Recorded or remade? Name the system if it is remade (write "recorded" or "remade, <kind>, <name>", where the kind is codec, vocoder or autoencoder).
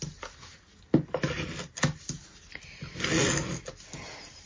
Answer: recorded